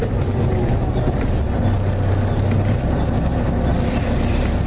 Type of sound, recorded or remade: recorded